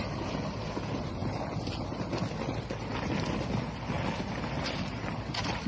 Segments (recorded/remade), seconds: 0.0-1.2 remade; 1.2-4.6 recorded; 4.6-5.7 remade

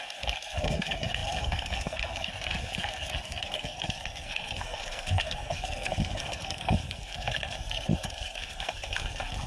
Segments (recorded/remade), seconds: 0.0-9.5 remade